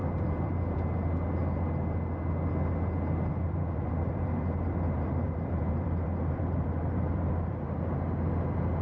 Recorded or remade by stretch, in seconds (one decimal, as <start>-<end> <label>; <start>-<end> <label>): 0.0-0.8 remade; 0.8-3.3 recorded; 3.3-7.5 remade; 7.5-8.8 recorded